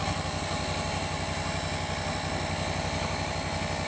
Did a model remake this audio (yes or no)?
no